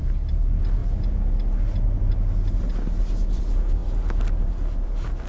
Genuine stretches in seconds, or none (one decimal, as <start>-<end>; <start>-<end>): 0.0-5.3